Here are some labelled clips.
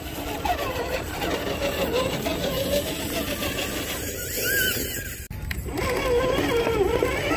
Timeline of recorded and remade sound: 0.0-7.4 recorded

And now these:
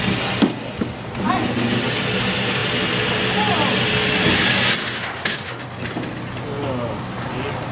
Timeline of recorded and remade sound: 0.0-4.8 recorded; 4.8-5.6 remade; 5.6-7.7 recorded

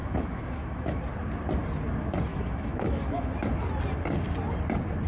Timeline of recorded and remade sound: 0.0-1.0 remade; 1.0-2.3 recorded; 2.3-3.3 remade; 3.3-5.1 recorded

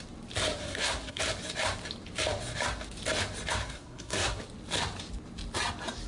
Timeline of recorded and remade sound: 0.0-0.6 recorded; 0.6-1.2 remade; 1.2-3.6 recorded; 3.6-4.4 remade; 4.4-6.1 recorded